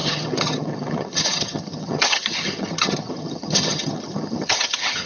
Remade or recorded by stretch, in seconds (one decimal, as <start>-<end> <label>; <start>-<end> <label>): 0.0-5.1 remade